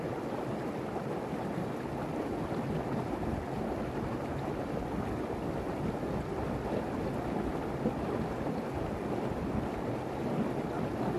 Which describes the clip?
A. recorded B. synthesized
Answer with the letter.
A